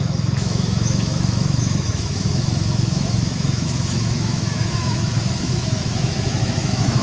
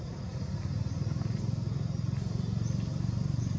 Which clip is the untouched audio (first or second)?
second